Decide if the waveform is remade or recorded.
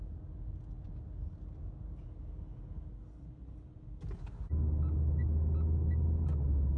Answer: recorded